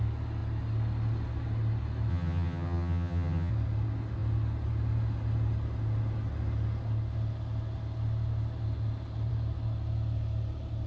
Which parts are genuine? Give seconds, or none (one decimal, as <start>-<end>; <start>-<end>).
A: 0.0-2.1; 3.5-10.9